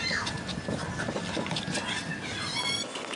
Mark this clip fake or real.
real